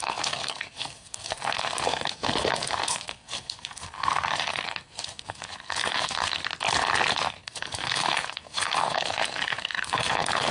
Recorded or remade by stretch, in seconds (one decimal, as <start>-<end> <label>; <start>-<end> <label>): 0.0-6.4 remade; 6.4-7.1 recorded; 7.1-10.5 remade